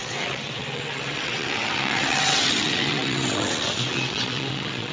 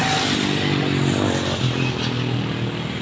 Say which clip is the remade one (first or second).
first